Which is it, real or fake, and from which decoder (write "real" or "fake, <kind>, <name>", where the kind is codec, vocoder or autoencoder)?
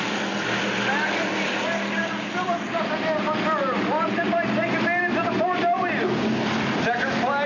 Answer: real